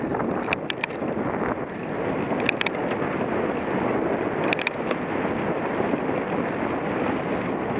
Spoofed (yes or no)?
no